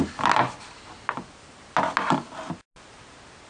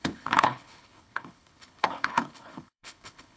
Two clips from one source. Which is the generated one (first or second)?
second